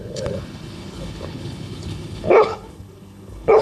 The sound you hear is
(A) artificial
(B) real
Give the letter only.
A